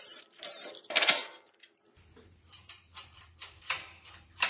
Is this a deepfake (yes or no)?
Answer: yes